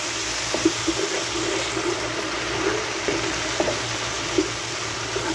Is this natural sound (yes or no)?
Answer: yes